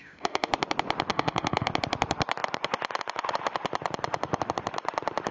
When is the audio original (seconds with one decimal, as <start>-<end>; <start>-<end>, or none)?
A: 0.5-1.1; 1.7-5.3